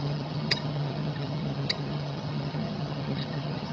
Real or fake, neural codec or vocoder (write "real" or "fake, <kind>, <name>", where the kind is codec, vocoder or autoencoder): fake, vocoder, HiFi-GAN